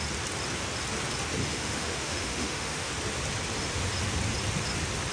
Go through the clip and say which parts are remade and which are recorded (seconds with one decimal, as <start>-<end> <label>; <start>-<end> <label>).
0.0-1.4 recorded; 1.4-2.9 remade; 2.9-5.1 recorded